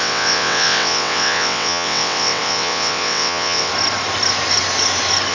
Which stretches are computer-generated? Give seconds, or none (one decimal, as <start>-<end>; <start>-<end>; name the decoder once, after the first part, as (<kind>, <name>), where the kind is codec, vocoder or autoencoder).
0.0-3.7 (vocoder, WaveNeXt)